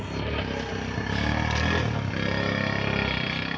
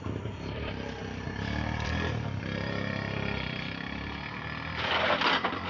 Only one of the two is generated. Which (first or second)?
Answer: second